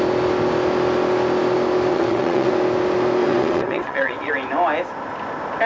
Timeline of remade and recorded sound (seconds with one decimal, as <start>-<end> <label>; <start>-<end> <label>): 0.0-1.9 recorded; 1.9-2.5 remade; 2.5-3.2 recorded; 3.2-4.3 remade; 4.3-5.7 recorded